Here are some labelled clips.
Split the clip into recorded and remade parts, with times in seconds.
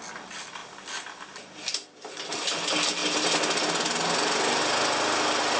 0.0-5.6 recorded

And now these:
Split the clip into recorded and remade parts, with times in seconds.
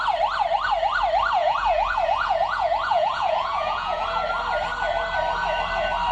0.0-1.4 recorded; 1.4-4.0 remade; 4.0-6.1 recorded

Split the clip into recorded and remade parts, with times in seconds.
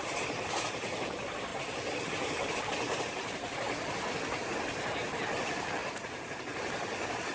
0.0-7.3 recorded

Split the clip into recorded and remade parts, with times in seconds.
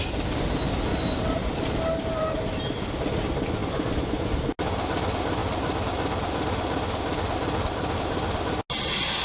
0.0-0.9 recorded; 0.9-1.5 remade; 1.5-3.6 recorded; 3.6-4.1 remade; 4.1-9.2 recorded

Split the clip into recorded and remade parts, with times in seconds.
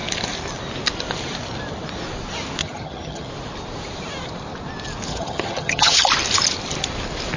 0.0-2.6 recorded; 2.6-3.3 remade; 3.3-5.1 recorded; 5.1-6.0 remade; 6.0-7.4 recorded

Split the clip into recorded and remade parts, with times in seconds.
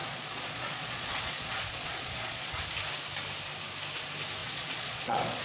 0.0-2.6 remade; 2.6-4.4 recorded; 4.4-5.4 remade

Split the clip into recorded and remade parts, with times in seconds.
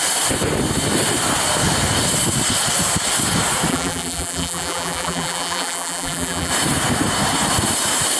0.0-3.7 recorded; 3.7-6.5 remade; 6.5-8.2 recorded